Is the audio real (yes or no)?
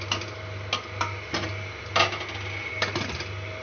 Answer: yes